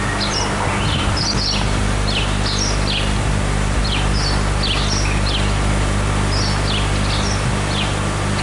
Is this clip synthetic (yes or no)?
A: no